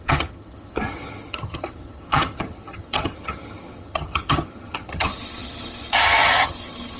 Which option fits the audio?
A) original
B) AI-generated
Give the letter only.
B